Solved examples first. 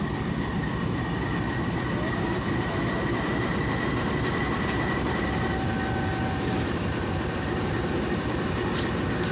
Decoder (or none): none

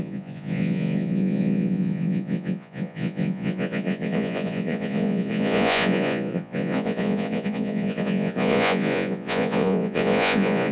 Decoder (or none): vocoder, Vocos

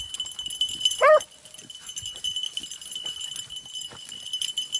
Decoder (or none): none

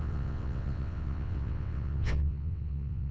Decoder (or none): vocoder, WaveNeXt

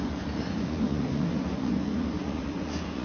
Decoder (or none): vocoder, Vocos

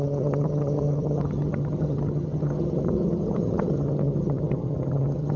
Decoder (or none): vocoder, HiFi-GAN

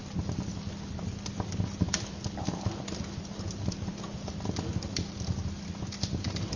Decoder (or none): none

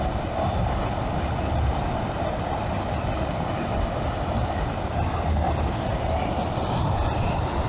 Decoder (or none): none